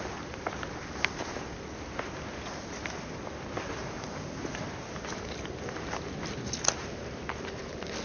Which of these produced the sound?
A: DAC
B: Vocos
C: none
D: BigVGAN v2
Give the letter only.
C